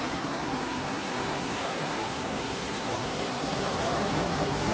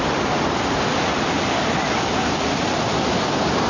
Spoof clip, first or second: first